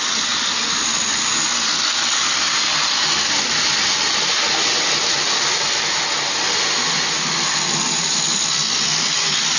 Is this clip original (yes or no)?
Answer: yes